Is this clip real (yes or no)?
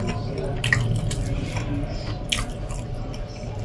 yes